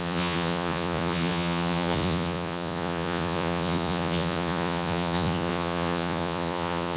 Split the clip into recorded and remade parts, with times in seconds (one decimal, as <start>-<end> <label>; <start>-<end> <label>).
0.0-7.0 remade

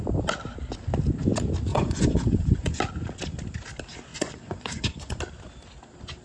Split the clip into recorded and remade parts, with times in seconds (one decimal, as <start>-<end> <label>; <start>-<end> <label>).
0.0-1.7 recorded; 1.7-2.8 remade; 2.8-4.1 recorded; 4.1-5.2 remade; 5.2-6.2 recorded

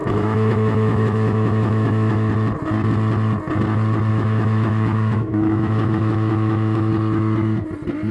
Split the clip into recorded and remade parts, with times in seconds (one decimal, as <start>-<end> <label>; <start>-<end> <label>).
0.0-2.3 remade; 2.3-4.1 recorded; 4.1-6.9 remade; 6.9-8.1 recorded